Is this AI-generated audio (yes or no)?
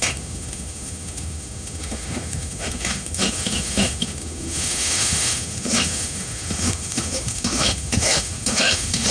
yes